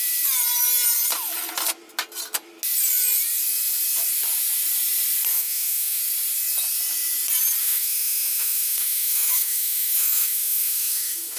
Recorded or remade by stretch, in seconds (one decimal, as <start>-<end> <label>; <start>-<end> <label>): 0.0-5.3 recorded; 5.3-6.0 remade; 6.0-7.6 recorded; 7.6-11.4 remade

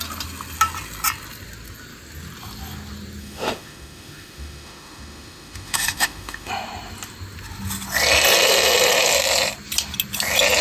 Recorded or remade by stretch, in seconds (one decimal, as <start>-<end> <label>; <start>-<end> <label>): 0.0-3.2 recorded; 3.2-6.5 remade; 6.5-10.6 recorded

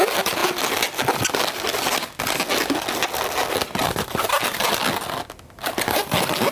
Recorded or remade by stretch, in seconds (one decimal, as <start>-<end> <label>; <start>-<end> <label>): 0.0-6.5 recorded

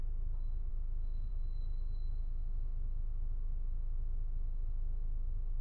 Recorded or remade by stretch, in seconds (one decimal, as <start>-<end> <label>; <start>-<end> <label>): 0.0-0.7 recorded; 0.7-1.3 remade; 1.3-2.2 recorded; 2.2-5.6 remade

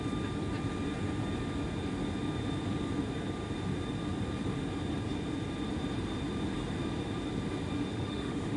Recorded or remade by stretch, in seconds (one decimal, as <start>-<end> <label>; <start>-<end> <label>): 0.0-7.9 recorded; 7.9-8.6 remade